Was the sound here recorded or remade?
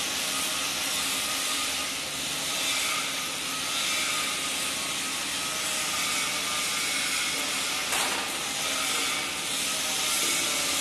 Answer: recorded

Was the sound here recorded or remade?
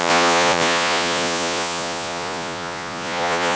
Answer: remade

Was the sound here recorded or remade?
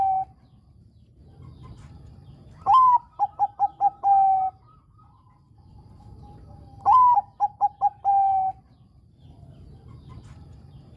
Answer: remade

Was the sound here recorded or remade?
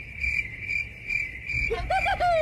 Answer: recorded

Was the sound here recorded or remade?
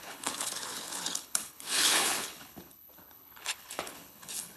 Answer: remade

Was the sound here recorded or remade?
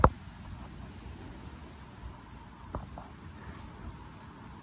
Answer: recorded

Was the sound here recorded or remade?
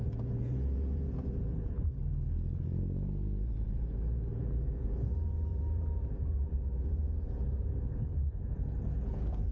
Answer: remade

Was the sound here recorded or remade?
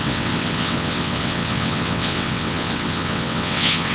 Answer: remade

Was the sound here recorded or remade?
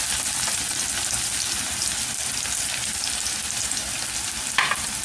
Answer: recorded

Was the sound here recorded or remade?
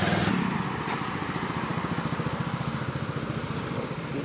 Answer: recorded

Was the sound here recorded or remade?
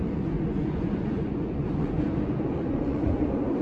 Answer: remade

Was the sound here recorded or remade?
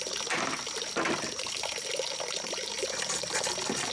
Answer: recorded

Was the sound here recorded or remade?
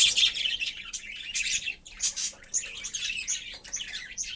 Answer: remade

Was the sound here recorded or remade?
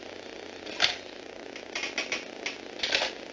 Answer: recorded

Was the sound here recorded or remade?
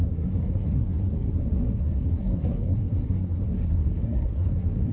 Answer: remade